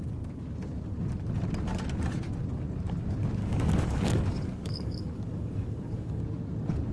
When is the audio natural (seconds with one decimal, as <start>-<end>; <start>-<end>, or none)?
0.0-3.4; 6.2-6.9